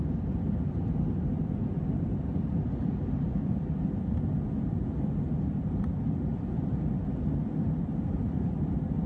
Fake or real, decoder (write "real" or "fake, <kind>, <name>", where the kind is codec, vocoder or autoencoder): real